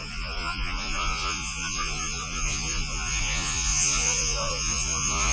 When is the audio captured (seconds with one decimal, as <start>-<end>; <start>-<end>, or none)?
none